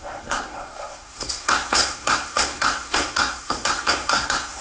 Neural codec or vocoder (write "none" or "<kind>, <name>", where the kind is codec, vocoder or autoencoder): codec, SNAC